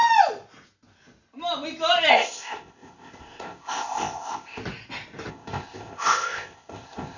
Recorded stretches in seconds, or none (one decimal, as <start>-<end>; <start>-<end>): 0.0-2.1; 4.6-5.3

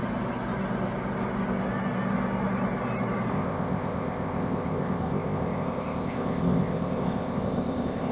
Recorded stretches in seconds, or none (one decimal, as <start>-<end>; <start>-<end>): 0.0-3.3

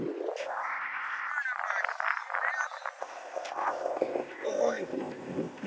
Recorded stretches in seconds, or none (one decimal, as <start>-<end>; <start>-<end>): 0.0-0.4; 1.3-3.0

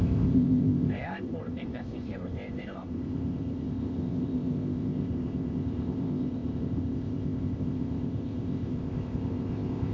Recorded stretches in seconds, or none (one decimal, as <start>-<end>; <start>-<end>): none

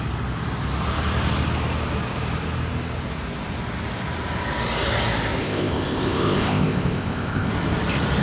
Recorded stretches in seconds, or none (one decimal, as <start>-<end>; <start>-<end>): 0.0-5.4; 7.5-8.2

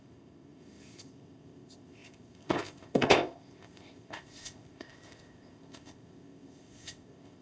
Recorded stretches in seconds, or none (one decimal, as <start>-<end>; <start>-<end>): none

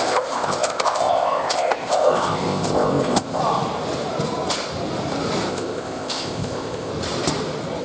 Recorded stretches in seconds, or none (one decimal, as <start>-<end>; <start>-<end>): 3.4-5.5; 6.9-7.8

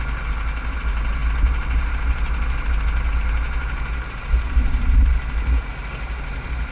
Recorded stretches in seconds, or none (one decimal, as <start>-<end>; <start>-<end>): 0.0-6.7